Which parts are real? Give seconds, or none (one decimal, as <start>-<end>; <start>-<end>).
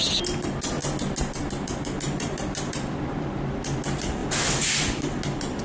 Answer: 0.0-5.6